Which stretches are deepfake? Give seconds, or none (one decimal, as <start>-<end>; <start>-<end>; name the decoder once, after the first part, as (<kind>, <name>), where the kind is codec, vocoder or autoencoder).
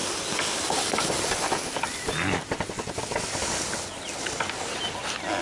none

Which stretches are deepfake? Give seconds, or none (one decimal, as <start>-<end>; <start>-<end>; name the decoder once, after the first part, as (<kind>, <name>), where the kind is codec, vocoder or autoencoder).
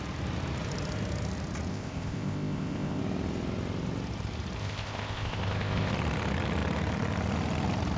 1.7-3.0 (codec, ZipCodec); 4.6-5.9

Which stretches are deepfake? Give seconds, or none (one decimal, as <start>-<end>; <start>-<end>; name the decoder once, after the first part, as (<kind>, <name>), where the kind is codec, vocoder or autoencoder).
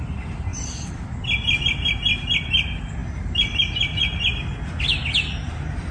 none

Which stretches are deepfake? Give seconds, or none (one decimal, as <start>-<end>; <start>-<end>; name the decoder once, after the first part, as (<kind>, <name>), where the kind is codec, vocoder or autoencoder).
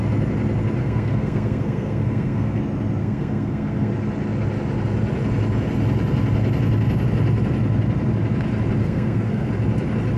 0.8-2.6 (codec, SNAC); 3.0-3.9; 8.8-9.5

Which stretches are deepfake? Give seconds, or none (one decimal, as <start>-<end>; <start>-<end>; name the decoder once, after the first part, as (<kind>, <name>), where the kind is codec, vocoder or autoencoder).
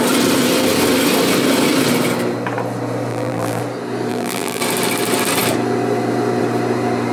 3.1-3.6 (vocoder, BigVGAN v2); 4.1-4.6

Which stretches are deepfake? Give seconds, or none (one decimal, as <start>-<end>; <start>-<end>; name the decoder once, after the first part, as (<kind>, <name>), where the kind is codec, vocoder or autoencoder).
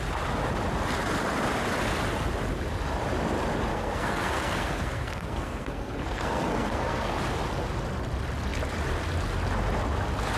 3.7-7.2 (codec, SNAC)